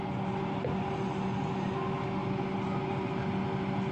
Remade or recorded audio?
recorded